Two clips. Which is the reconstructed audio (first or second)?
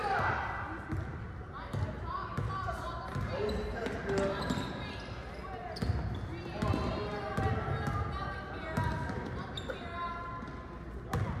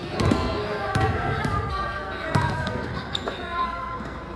second